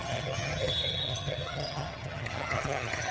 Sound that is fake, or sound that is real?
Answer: fake